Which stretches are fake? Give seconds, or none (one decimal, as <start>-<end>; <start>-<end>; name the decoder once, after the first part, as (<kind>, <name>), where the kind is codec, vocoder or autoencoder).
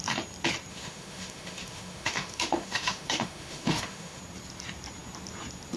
0.7-4.2 (autoencoder, DAC-VAE)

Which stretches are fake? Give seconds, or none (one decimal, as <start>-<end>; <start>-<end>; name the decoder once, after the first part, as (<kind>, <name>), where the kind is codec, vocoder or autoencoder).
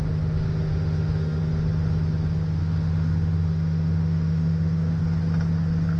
0.7-1.4 (autoencoder, DAC-VAE); 2.6-5.0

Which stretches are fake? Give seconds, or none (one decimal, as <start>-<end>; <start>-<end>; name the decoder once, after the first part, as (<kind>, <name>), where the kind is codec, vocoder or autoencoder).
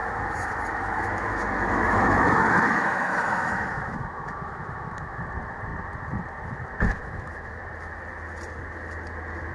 0.0-5.2 (autoencoder, DAC-VAE); 6.9-7.6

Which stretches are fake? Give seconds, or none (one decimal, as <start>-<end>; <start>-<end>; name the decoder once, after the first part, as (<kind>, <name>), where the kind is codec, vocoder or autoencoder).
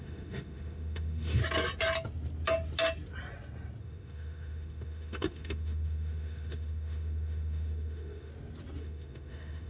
0.0-1.4 (autoencoder, DAC-VAE); 3.8-8.3; 8.8-9.7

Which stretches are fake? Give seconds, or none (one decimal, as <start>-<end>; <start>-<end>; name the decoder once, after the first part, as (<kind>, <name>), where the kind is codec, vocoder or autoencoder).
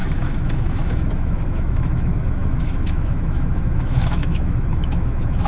0.0-5.5 (autoencoder, DAC-VAE)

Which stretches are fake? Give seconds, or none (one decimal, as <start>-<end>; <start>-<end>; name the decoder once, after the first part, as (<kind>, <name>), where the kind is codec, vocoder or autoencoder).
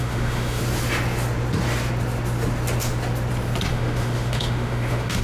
0.0-0.6 (autoencoder, DAC-VAE); 3.7-5.2